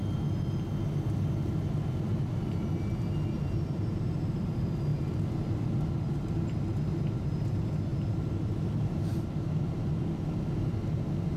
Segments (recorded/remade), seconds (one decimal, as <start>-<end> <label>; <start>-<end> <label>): 0.0-11.4 recorded